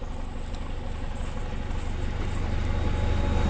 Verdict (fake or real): real